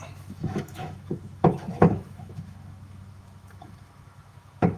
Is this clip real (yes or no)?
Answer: no